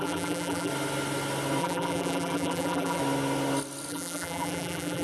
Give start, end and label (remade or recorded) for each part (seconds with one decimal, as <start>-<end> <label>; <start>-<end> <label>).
0.0-0.7 remade; 0.7-1.6 recorded; 1.6-3.0 remade; 3.0-3.9 recorded; 3.9-5.0 remade

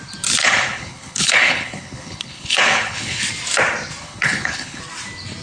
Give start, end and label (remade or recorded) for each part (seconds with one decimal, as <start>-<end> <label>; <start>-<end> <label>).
0.0-0.4 recorded; 0.4-3.2 remade; 3.2-4.0 recorded; 4.0-4.8 remade; 4.8-5.4 recorded

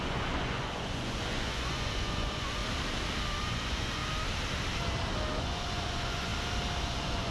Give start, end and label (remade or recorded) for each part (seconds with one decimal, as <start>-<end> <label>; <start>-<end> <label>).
0.0-2.6 remade; 2.6-3.4 recorded; 3.4-4.0 remade; 4.0-5.4 recorded; 5.4-6.3 remade; 6.3-6.8 recorded; 6.8-7.3 remade

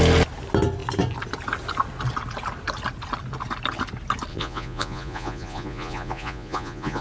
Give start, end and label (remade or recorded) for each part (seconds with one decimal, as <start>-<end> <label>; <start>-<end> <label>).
0.0-4.3 recorded; 4.3-7.0 remade

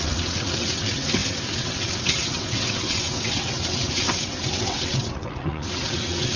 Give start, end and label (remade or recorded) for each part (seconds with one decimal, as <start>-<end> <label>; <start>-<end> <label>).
0.0-6.4 remade

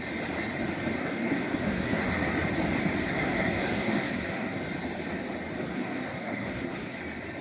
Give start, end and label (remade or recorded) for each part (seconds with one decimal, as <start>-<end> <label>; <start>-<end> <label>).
0.0-1.0 recorded; 1.0-2.1 remade; 2.1-3.0 recorded; 3.0-4.6 remade; 4.6-5.7 recorded; 5.7-7.0 remade; 7.0-7.4 recorded

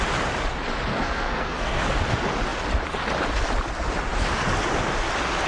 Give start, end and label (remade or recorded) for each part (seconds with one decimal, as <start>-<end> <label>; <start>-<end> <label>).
0.0-0.9 recorded; 0.9-1.8 remade; 1.8-5.5 recorded

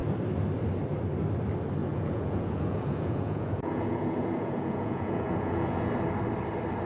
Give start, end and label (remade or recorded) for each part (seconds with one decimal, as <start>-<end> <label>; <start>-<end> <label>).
0.0-1.8 recorded; 1.8-5.9 remade; 5.9-6.9 recorded